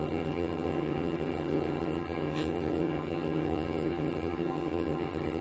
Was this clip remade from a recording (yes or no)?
yes